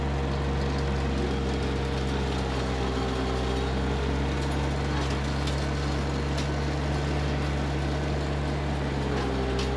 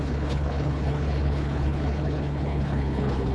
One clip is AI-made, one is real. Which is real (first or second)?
first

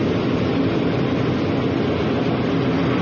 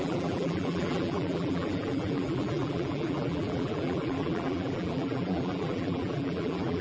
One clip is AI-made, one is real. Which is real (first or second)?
first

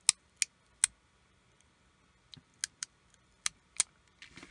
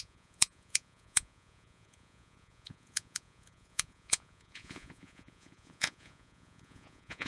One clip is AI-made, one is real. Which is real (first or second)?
first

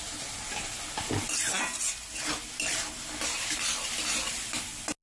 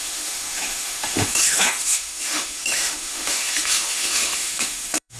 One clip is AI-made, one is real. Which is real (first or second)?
first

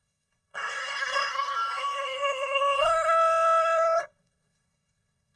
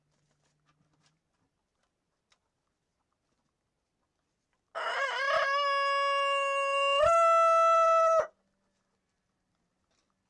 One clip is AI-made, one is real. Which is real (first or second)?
second